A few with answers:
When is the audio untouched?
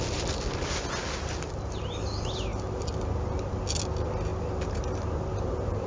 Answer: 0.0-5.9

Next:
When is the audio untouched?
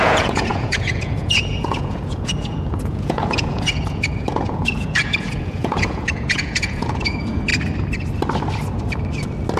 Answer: 7.5-9.6